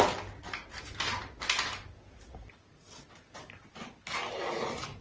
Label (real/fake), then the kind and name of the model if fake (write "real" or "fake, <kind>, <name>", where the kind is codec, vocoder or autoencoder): real